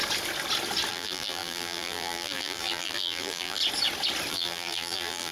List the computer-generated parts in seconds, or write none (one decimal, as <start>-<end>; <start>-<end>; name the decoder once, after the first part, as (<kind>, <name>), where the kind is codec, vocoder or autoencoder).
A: 0.9-3.6 (vocoder, BigVGAN v2); 4.3-5.3